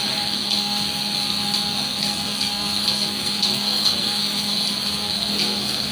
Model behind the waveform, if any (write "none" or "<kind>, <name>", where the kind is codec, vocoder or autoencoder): codec, SNAC